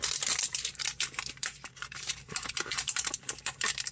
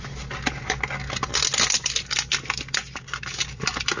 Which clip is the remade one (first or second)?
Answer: first